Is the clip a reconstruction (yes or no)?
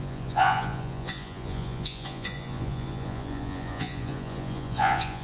yes